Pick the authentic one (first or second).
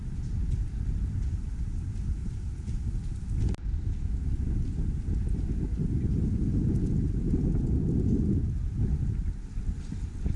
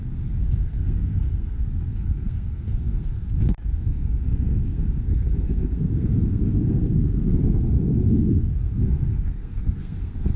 first